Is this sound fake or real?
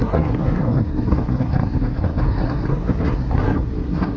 fake